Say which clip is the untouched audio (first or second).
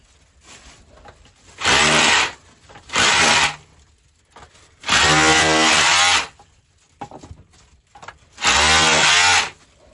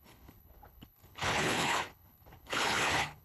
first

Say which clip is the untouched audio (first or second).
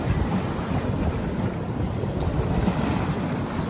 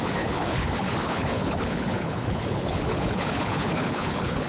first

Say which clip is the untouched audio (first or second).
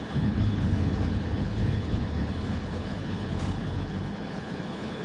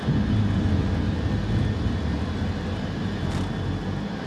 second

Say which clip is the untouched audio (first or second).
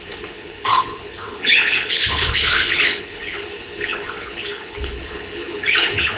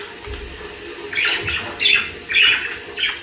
second